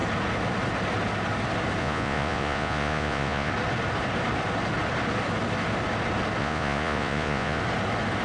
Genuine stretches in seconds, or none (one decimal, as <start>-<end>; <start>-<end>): 0.0-1.8; 3.5-6.4; 7.6-8.2